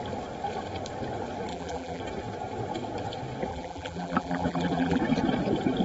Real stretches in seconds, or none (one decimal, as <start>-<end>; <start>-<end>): 0.0-1.5; 2.0-3.5; 5.0-5.8